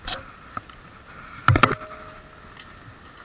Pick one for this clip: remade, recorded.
recorded